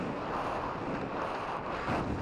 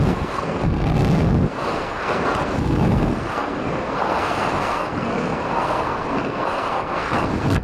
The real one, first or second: first